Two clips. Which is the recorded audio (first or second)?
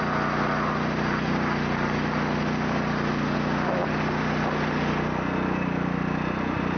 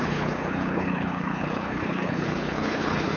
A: first